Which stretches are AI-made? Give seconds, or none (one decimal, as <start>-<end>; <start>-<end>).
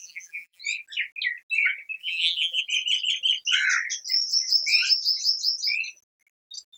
0.0-0.6; 2.0-2.6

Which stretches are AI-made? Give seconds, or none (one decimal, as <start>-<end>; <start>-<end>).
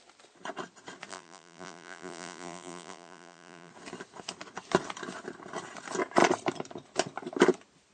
1.1-3.7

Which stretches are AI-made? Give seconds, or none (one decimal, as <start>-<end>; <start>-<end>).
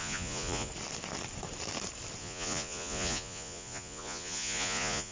0.0-0.7; 2.2-5.1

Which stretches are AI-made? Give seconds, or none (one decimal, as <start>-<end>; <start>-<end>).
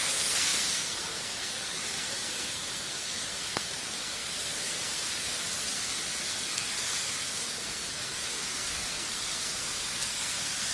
0.0-10.7